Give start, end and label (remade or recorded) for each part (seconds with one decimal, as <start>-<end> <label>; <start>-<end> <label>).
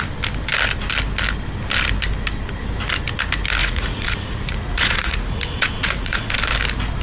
0.0-3.6 recorded; 3.6-6.3 remade; 6.3-7.0 recorded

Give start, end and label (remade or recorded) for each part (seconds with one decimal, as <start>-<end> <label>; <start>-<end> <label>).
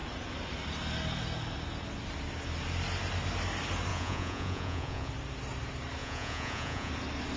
0.0-3.9 recorded; 3.9-5.1 remade; 5.1-6.0 recorded; 6.0-6.9 remade; 6.9-7.4 recorded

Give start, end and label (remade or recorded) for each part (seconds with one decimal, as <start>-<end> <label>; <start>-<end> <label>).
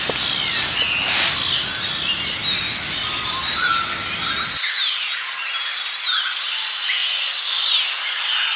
0.0-8.6 recorded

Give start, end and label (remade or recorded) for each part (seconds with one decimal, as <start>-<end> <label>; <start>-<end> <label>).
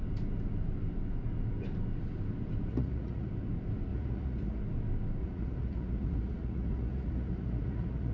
0.0-2.7 recorded; 2.7-3.3 remade; 3.3-3.9 recorded; 3.9-4.6 remade; 4.6-5.2 recorded; 5.2-8.1 remade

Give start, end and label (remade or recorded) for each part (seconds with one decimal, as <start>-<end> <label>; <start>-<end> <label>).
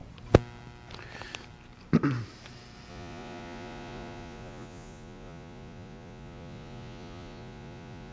0.0-2.9 recorded; 2.9-8.1 remade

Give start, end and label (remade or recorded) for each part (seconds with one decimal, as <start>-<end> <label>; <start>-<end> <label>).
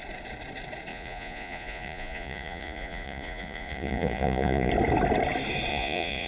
0.0-0.9 recorded; 0.9-4.7 remade; 4.7-5.7 recorded; 5.7-6.3 remade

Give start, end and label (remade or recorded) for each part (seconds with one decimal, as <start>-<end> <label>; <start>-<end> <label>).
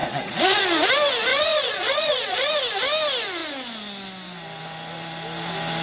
0.0-0.6 remade; 0.6-1.3 recorded; 1.3-2.5 remade; 2.5-5.8 recorded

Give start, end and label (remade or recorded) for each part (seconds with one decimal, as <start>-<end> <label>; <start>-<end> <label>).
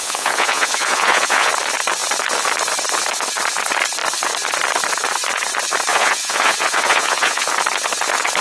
0.0-1.5 remade; 1.5-5.9 recorded; 5.9-7.5 remade; 7.5-8.4 recorded